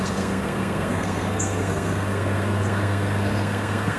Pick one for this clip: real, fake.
fake